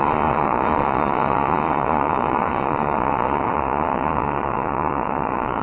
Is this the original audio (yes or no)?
no